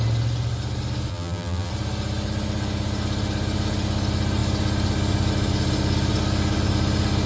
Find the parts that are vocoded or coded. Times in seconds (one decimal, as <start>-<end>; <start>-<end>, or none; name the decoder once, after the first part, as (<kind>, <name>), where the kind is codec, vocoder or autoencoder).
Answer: 1.1-1.7 (vocoder, BigVGAN v2)